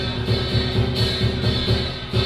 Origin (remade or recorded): recorded